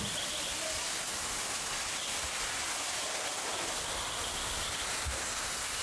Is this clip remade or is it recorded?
recorded